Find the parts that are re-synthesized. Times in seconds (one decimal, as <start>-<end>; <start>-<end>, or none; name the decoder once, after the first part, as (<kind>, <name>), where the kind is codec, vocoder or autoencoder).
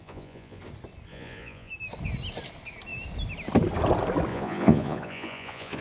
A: 0.0-0.6 (vocoder, Vocos); 1.1-1.7; 4.3-5.8